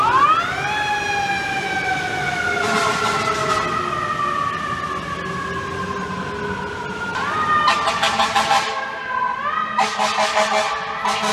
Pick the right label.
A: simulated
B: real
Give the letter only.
B